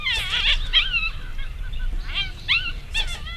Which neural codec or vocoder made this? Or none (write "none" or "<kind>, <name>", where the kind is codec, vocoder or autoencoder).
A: vocoder, BigVGAN v2